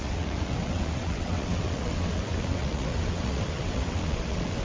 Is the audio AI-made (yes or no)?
yes